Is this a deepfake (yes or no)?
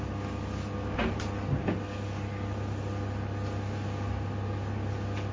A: no